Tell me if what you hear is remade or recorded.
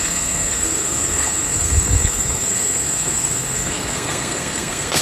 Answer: remade